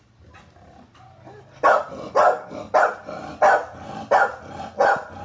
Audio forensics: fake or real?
real